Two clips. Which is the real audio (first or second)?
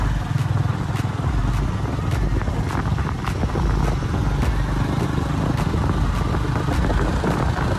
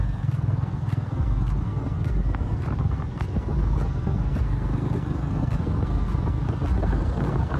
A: first